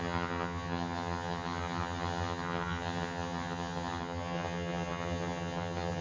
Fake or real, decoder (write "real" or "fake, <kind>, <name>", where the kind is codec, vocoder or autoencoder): fake, vocoder, HiFi-GAN